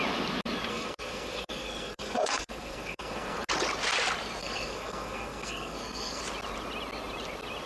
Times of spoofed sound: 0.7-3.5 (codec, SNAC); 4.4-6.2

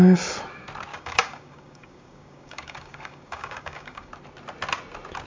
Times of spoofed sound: 0.9-4.1 (codec, DAC)

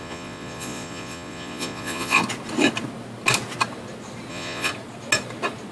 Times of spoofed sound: 0.0-2.2 (vocoder, Vocos); 4.3-4.7